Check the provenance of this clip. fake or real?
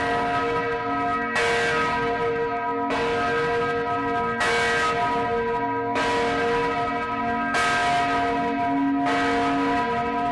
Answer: real